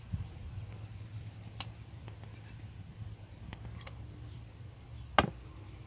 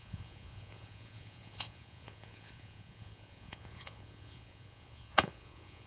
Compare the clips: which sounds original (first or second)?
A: first